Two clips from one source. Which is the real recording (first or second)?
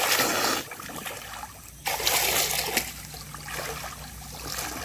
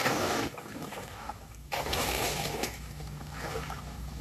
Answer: first